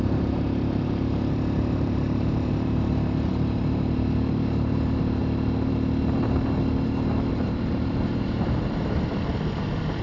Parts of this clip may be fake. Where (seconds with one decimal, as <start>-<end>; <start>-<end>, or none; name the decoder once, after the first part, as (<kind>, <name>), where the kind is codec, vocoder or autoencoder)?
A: 0.0-5.2 (vocoder, BigVGAN v2); 7.3-10.0